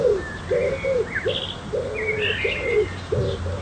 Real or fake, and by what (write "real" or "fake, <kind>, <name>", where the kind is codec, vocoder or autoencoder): real